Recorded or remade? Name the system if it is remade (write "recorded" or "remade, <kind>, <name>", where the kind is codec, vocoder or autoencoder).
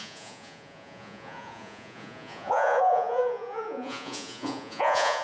remade, vocoder, Vocos